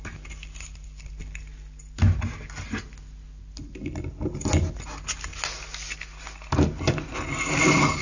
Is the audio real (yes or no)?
yes